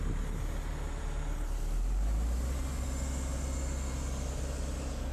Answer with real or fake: real